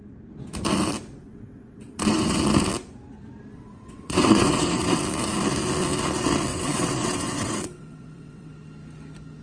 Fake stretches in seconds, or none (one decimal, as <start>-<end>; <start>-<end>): 1.2-2.4; 3.5-5.0; 6.5-8.5